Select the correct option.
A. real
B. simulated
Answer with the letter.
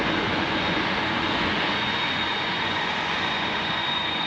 B